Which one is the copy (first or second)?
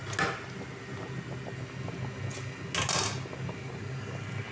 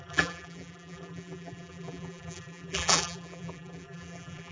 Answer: second